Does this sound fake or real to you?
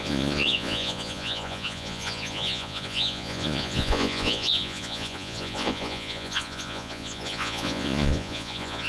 fake